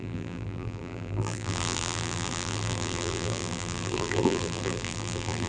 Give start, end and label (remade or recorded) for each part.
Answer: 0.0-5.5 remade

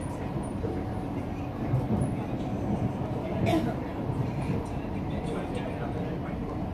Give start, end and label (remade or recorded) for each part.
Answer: 0.0-0.5 recorded; 0.5-1.4 remade; 1.4-3.9 recorded; 3.9-5.1 remade; 5.1-6.7 recorded

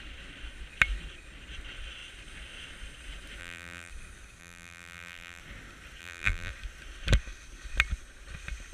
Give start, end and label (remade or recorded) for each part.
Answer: 0.0-3.4 recorded; 3.4-3.9 remade; 3.9-4.4 recorded; 4.4-5.4 remade; 5.4-6.0 recorded; 6.0-6.5 remade; 6.5-8.7 recorded

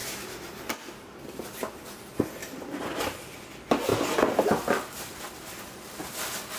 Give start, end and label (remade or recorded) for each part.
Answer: 0.0-2.4 recorded; 2.4-3.4 remade; 3.4-3.9 recorded; 3.9-5.8 remade; 5.8-6.6 recorded

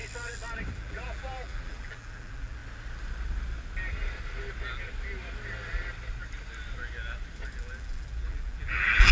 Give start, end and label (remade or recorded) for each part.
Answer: 0.0-0.7 recorded; 0.7-2.6 remade; 2.6-7.6 recorded; 7.6-9.1 remade

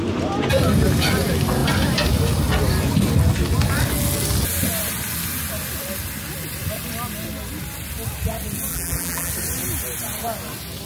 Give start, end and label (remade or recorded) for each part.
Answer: 0.0-8.7 recorded; 8.7-9.3 remade; 9.3-10.9 recorded